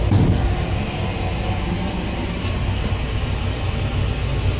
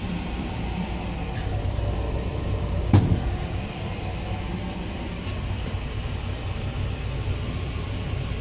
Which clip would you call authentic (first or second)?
first